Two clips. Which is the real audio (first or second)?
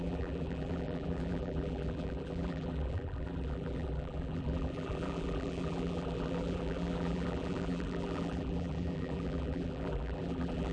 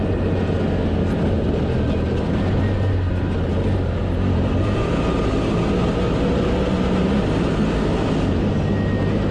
second